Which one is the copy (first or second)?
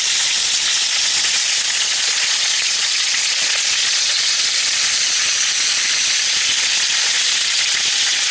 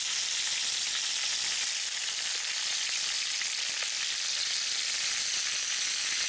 first